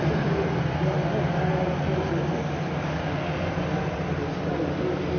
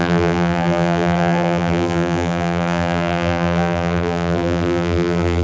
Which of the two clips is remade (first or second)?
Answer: second